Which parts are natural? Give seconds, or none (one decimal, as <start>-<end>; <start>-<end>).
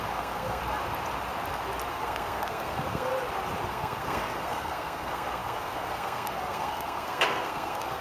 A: 0.6-1.9; 3.1-3.7